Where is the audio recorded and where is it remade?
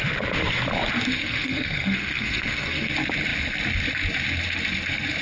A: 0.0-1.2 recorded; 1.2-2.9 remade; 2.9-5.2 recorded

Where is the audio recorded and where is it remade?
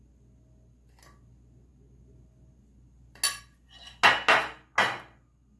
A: 0.0-5.6 recorded